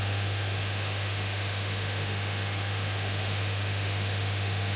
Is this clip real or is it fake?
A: fake